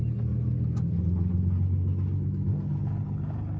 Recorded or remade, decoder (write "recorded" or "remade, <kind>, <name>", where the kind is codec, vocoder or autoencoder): recorded